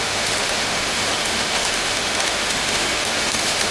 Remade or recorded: remade